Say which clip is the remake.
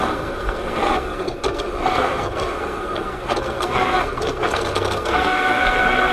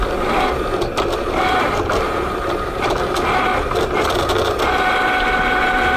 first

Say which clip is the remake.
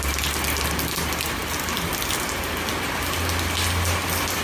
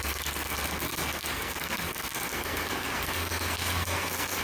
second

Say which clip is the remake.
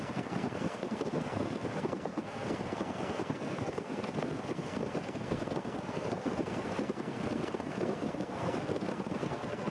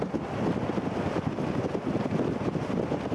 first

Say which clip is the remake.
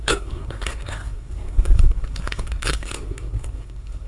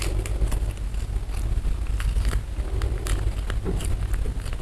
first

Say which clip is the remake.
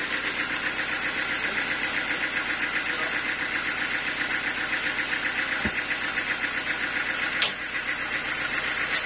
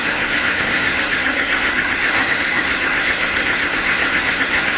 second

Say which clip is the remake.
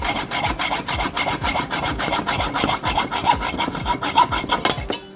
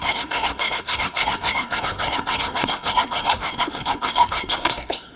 second